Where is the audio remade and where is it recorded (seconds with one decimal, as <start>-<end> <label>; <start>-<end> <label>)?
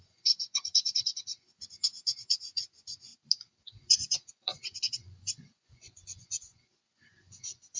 0.0-3.1 remade; 3.1-3.6 recorded; 3.6-7.8 remade